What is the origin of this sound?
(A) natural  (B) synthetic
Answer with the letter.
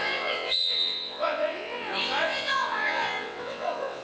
B